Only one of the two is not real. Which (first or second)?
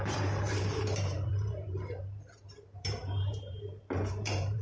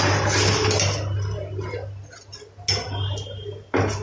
first